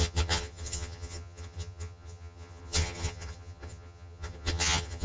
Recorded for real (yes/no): no